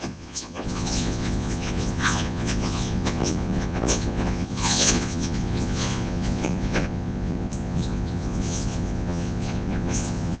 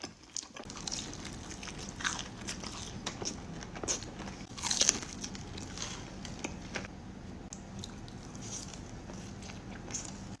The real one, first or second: second